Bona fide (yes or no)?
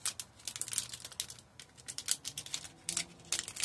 yes